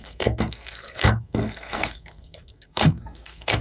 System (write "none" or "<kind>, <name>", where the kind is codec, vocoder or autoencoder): codec, SNAC